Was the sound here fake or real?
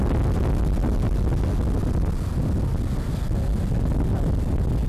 real